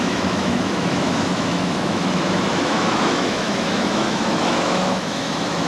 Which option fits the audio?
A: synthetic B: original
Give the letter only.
A